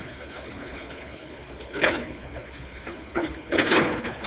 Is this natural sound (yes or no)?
no